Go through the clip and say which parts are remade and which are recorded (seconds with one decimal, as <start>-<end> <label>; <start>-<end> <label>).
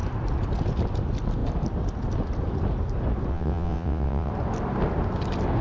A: 0.0-3.3 recorded; 3.3-4.3 remade; 4.3-5.6 recorded